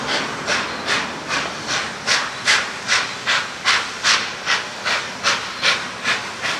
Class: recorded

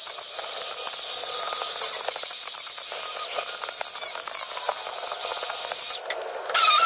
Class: recorded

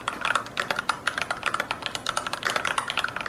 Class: recorded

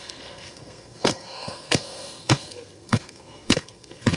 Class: remade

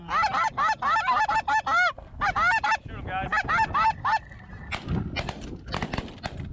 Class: recorded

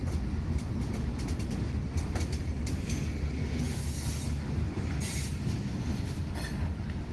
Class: recorded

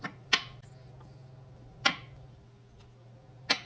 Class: recorded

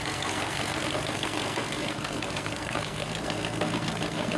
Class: remade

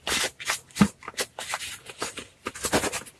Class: recorded